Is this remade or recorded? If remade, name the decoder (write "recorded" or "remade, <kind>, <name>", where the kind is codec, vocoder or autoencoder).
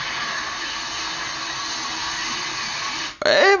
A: recorded